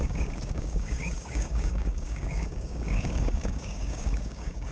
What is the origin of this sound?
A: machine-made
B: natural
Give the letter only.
A